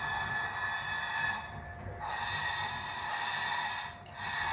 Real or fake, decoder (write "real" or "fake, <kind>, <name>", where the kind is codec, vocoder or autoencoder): real